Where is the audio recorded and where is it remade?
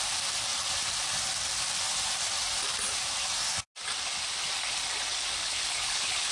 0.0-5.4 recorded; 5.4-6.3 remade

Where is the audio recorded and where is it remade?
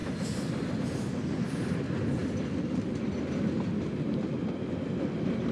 0.0-5.5 recorded